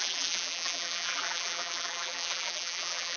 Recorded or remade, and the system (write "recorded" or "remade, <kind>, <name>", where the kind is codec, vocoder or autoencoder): remade, vocoder, BigVGAN v2